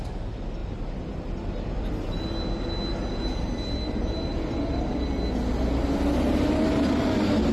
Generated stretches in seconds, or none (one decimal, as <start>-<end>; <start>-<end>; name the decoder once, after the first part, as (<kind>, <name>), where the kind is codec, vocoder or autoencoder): none

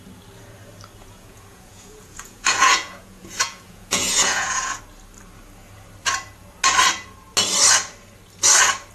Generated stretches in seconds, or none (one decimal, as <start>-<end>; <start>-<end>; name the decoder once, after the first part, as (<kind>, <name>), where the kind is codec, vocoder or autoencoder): 1.0-4.8 (vocoder, Vocos)

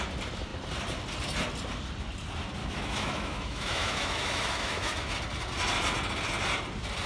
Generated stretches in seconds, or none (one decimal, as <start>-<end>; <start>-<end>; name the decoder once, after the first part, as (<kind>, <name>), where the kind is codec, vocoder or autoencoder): 2.6-5.1 (autoencoder, DAC-VAE)

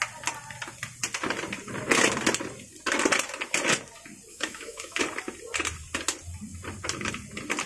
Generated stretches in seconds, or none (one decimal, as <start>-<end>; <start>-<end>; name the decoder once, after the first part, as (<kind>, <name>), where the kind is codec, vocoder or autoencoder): 4.3-5.0 (autoencoder, DAC-VAE)

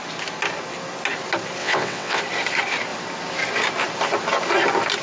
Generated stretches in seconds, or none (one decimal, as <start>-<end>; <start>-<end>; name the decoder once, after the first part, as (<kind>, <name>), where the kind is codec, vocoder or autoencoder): 1.6-2.2 (vocoder, WaveNeXt)

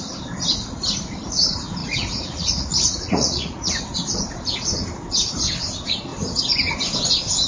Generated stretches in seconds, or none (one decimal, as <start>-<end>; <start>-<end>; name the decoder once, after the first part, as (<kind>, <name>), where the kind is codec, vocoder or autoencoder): 1.8-3.8 (vocoder, Vocos)